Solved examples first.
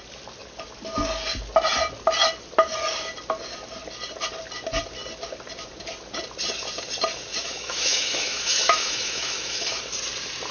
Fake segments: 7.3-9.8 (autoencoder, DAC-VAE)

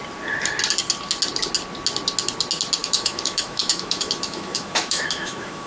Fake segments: 2.8-5.7 (autoencoder, DAC-VAE)

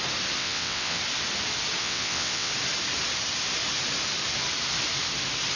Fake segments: 0.4-1.0 (vocoder, WaveNeXt); 1.8-2.5

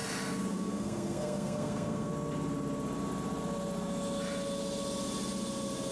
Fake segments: 0.5-2.1 (codec, SNAC)

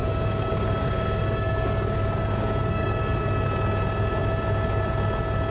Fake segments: 0.0-3.2 (codec, DAC)

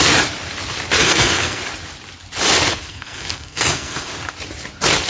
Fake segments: 1.0-1.6 (codec, SNAC); 2.7-4.1

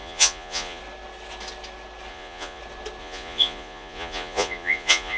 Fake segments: 0.0-0.8 (vocoder, Vocos); 2.1-2.6; 3.0-5.2

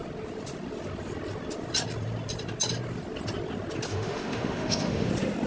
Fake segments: 3.9-5.1 (autoencoder, DAC-VAE)